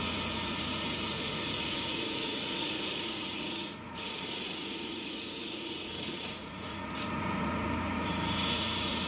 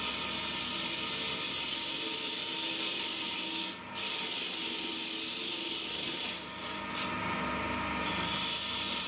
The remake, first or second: first